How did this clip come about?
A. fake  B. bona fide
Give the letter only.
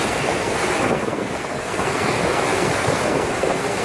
A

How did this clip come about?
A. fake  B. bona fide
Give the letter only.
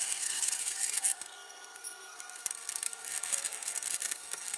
A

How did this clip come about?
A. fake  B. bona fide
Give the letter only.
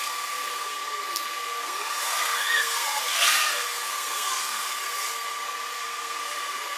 A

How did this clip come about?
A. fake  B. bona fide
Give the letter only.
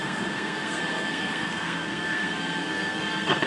A